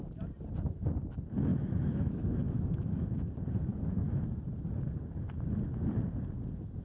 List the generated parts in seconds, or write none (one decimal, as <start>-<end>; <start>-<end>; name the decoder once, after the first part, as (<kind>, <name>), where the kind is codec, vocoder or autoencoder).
1.5-3.3 (autoencoder, DAC-VAE); 3.7-4.2